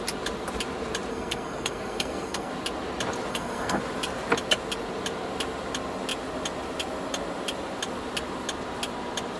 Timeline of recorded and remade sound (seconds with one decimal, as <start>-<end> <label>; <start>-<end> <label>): 0.0-1.1 recorded; 1.1-2.5 remade; 2.5-3.3 recorded; 3.3-3.8 remade; 3.8-9.4 recorded